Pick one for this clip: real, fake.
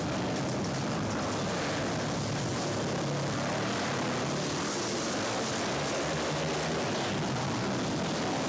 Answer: real